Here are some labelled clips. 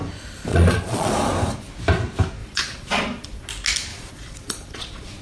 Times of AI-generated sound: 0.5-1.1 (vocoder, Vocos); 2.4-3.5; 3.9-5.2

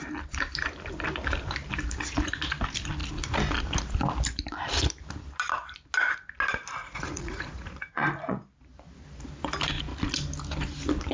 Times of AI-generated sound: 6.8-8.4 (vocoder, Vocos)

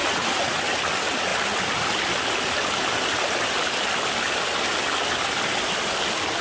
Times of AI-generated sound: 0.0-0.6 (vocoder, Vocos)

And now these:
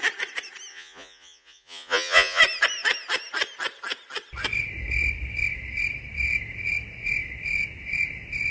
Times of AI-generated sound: 0.7-2.4 (vocoder, Vocos)